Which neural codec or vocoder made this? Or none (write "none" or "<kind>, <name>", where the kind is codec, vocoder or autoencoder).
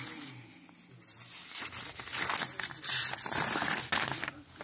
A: none